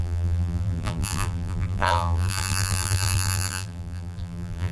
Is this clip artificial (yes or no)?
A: yes